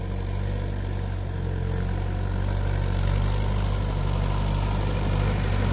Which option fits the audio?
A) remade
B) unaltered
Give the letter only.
B